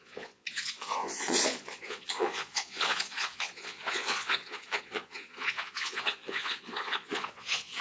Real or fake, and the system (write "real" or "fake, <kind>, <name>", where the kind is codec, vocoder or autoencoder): fake, vocoder, Vocos